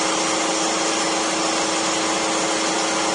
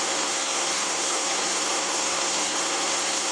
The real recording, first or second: first